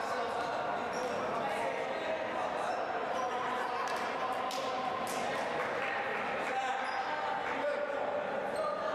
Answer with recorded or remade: recorded